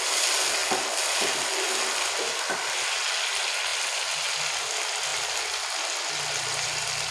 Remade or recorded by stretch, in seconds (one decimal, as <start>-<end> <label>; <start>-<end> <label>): 0.0-7.1 recorded